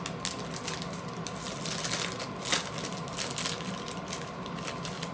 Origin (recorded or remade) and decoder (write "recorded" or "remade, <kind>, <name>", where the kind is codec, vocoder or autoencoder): recorded